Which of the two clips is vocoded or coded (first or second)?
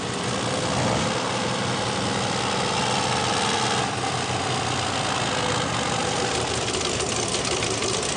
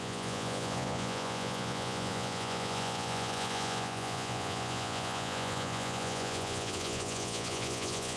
second